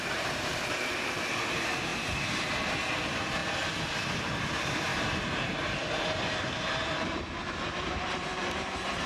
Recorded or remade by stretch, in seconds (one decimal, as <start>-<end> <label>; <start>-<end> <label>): 0.0-3.4 remade; 3.4-4.1 recorded; 4.1-9.1 remade